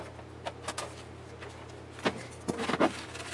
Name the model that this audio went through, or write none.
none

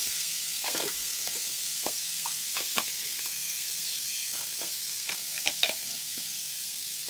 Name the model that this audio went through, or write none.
codec, SNAC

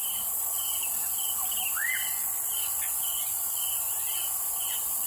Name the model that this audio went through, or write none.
none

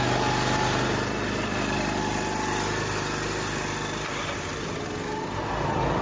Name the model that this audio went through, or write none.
none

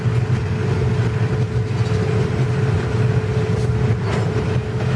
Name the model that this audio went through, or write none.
none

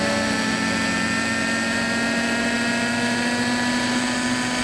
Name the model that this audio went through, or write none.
none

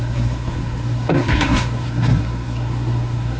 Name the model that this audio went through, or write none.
codec, SNAC